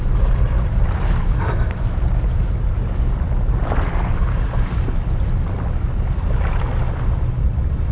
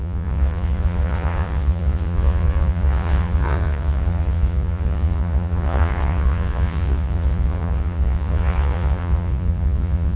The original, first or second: first